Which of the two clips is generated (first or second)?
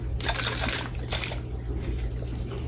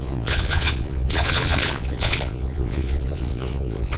second